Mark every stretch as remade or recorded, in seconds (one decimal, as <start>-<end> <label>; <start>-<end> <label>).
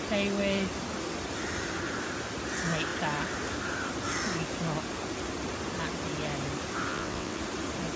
0.0-6.9 recorded; 6.9-7.4 remade; 7.4-8.0 recorded